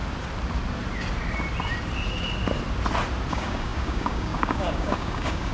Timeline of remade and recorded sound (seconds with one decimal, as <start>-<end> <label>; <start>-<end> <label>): 0.0-3.3 recorded; 3.3-5.5 remade